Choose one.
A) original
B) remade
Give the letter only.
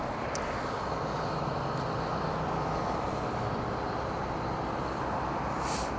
A